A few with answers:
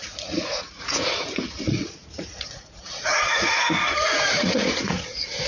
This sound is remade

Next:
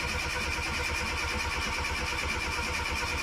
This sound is recorded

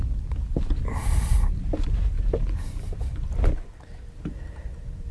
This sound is recorded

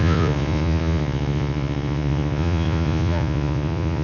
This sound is remade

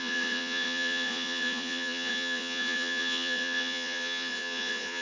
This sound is remade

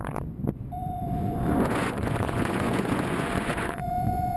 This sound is remade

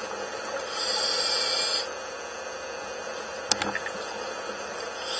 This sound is recorded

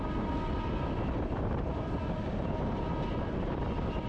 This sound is recorded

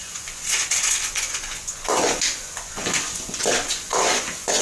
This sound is remade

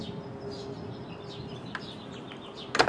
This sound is recorded